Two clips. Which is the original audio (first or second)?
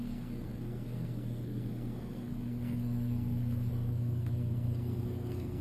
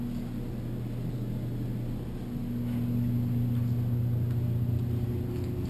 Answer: second